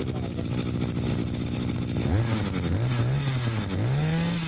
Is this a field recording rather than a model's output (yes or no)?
yes